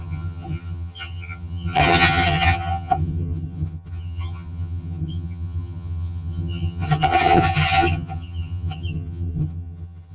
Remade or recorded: remade